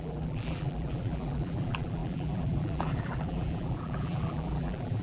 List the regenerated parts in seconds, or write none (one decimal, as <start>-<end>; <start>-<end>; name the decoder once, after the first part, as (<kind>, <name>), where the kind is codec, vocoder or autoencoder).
0.0-5.0 (vocoder, BigVGAN v2)